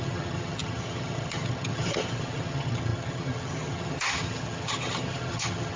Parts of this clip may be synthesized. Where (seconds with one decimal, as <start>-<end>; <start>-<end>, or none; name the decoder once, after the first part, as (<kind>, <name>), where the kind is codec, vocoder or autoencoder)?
0.0-5.8 (vocoder, HiFi-GAN)